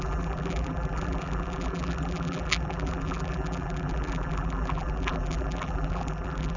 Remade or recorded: remade